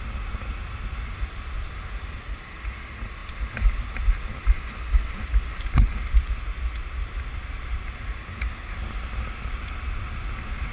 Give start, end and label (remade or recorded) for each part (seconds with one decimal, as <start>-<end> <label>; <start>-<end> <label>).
0.0-10.7 recorded